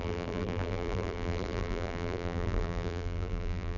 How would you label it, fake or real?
fake